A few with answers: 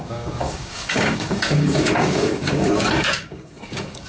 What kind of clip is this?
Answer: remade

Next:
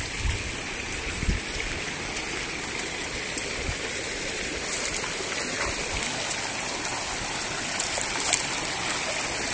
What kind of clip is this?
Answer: recorded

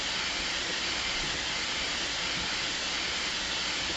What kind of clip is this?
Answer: recorded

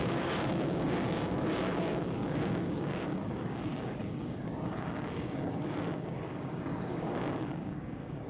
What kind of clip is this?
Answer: remade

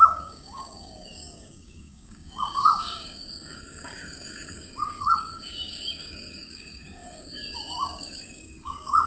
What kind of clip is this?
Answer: remade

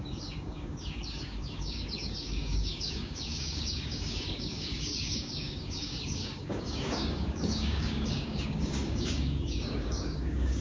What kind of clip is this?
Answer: remade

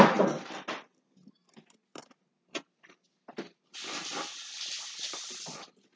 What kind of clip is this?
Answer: recorded